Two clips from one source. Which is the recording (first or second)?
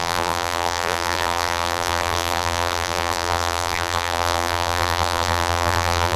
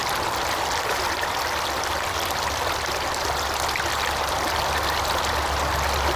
second